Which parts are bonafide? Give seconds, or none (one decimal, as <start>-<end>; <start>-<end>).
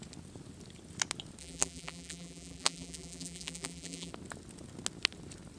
0.0-1.4; 4.1-5.6